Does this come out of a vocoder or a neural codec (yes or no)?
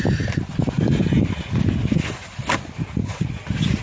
no